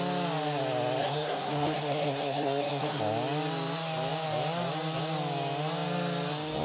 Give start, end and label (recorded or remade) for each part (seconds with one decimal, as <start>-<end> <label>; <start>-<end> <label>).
0.0-1.0 recorded; 1.0-3.0 remade; 3.0-6.6 recorded